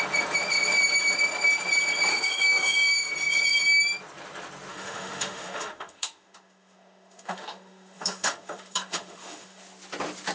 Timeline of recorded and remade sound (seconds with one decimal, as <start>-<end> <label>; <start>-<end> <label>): 0.0-2.1 recorded; 2.1-3.1 remade; 3.1-4.7 recorded; 4.7-9.6 remade; 9.6-10.3 recorded